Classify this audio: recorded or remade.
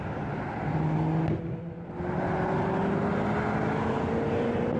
recorded